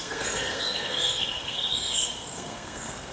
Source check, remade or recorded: remade